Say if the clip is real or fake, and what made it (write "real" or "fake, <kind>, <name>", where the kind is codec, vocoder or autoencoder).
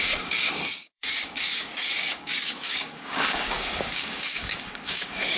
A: fake, codec, DAC